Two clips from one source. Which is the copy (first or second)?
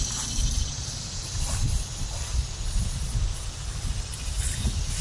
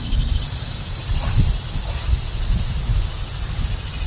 first